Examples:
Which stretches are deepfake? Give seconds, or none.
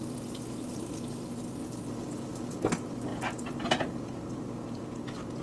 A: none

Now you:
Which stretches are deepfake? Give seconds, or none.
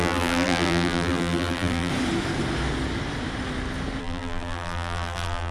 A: 0.0-1.9 (vocoder, BigVGAN v2); 4.0-5.5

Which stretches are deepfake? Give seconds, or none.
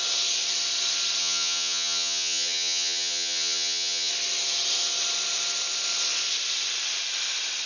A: 1.2-4.1 (vocoder, HiFi-GAN)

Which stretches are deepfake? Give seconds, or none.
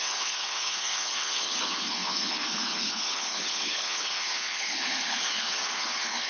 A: 0.0-6.3 (codec, HILCodec)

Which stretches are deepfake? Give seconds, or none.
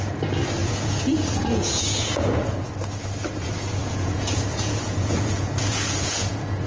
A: 0.6-2.7 (vocoder, Vocos); 3.8-6.7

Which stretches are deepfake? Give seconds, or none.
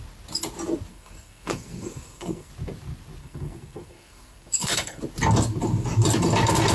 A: 0.9-2.5 (codec, SNAC); 3.2-5.0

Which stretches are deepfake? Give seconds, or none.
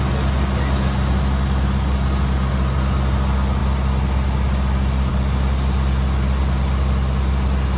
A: none